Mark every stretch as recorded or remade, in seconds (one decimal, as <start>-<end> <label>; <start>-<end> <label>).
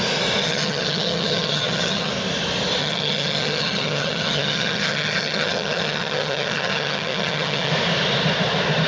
0.0-0.4 recorded; 0.4-2.1 remade; 2.1-2.8 recorded; 2.8-7.7 remade; 7.7-8.9 recorded